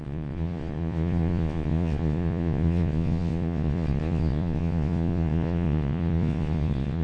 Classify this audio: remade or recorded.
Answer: remade